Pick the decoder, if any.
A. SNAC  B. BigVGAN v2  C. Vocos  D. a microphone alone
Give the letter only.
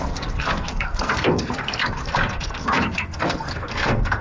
A